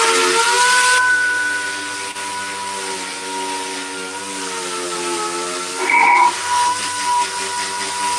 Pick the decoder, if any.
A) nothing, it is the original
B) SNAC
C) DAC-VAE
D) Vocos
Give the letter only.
A